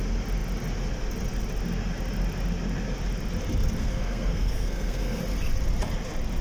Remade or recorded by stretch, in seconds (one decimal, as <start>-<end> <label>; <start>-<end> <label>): 0.0-3.8 recorded; 3.8-5.2 remade; 5.2-6.4 recorded